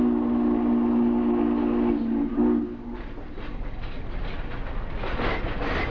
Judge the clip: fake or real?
real